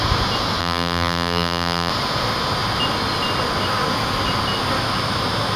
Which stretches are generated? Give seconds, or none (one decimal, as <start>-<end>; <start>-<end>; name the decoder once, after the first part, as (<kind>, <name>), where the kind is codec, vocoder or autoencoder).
0.6-1.9 (vocoder, BigVGAN v2)